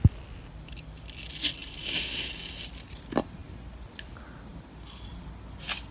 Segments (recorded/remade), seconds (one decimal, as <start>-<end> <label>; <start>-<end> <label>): 0.0-5.9 recorded